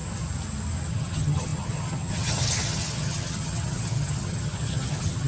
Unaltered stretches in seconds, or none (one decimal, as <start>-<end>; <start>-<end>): 0.0-0.9